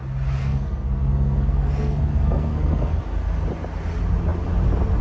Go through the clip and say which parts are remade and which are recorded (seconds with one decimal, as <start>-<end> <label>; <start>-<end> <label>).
0.0-0.4 recorded; 0.4-3.0 remade; 3.0-5.0 recorded